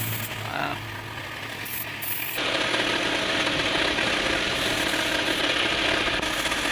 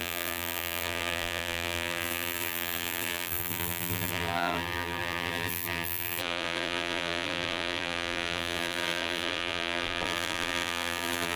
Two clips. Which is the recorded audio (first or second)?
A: first